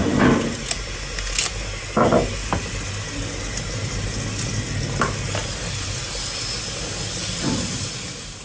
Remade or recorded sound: recorded